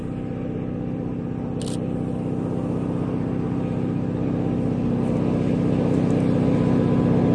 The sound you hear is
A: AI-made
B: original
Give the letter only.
B